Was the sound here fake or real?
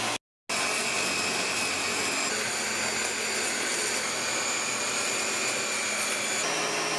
real